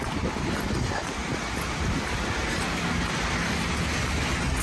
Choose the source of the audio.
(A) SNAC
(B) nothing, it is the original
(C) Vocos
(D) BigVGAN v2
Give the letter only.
B